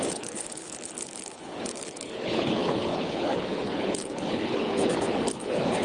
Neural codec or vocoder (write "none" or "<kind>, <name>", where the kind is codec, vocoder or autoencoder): codec, HILCodec